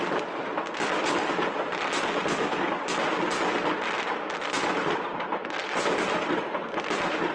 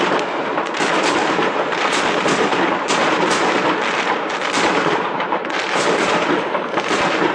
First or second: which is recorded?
first